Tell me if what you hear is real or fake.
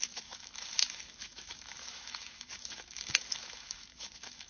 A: fake